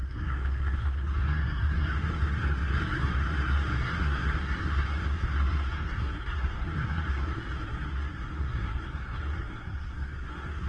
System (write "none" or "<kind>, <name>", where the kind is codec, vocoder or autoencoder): codec, SNAC